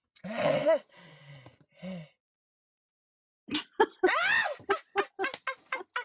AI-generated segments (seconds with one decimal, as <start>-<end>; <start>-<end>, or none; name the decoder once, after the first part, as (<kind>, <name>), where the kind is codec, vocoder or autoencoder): 0.0-1.0 (vocoder, WaveNeXt)